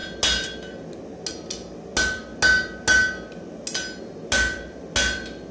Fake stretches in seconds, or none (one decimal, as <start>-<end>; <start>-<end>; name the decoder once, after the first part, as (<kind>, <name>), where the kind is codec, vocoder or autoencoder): none